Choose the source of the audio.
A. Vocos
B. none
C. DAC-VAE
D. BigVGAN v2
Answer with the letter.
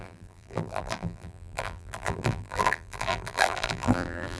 D